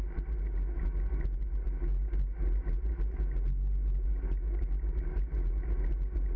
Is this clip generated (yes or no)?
no